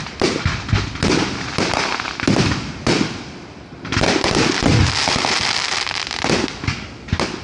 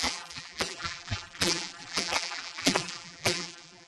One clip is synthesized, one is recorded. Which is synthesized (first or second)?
second